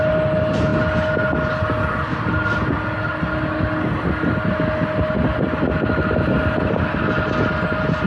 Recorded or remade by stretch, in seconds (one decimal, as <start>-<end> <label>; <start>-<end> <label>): 0.0-8.1 recorded